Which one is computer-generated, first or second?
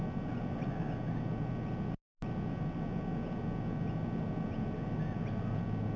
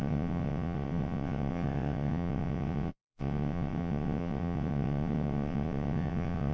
second